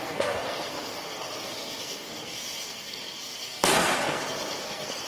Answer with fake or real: fake